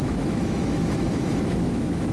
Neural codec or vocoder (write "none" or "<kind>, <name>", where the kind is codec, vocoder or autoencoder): autoencoder, DAC-VAE